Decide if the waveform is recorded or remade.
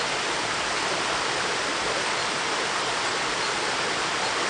recorded